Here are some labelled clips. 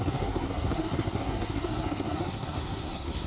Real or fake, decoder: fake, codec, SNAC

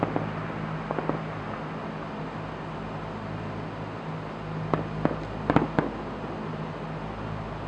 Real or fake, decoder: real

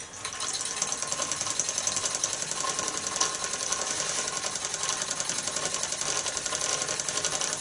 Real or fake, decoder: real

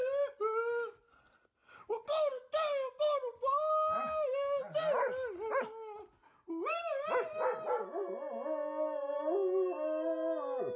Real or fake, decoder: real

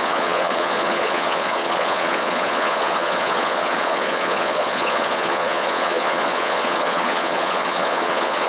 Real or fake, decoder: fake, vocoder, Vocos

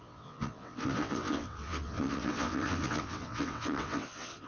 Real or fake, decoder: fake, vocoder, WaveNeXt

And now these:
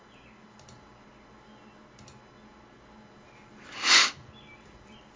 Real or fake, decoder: real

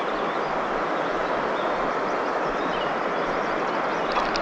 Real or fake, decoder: real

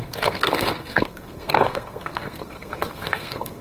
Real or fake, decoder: fake, codec, SNAC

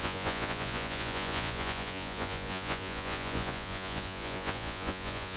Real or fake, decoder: fake, vocoder, Vocos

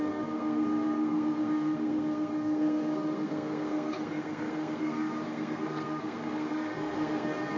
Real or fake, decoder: fake, codec, SNAC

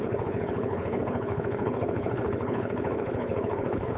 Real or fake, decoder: fake, codec, HILCodec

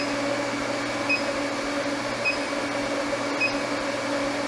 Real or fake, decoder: real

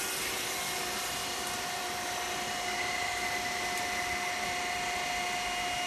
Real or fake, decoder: real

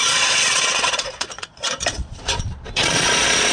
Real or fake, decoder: fake, vocoder, Vocos